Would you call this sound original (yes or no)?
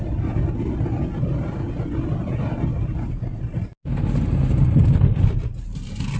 yes